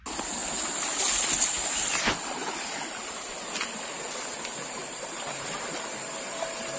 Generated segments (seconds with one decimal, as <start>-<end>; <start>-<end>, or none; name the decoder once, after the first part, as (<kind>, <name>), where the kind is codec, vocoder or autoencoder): 4.8-6.8 (vocoder, BigVGAN v2)